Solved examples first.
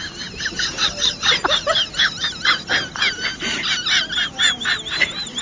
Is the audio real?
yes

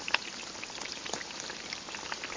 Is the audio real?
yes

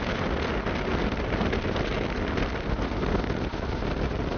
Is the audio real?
yes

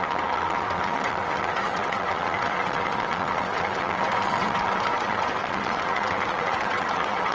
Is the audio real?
no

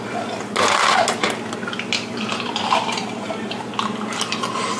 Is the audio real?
yes